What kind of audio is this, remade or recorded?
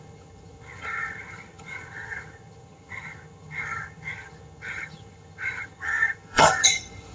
remade